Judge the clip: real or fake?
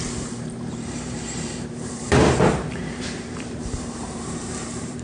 fake